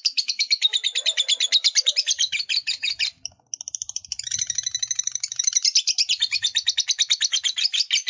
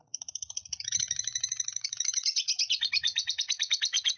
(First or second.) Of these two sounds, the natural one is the first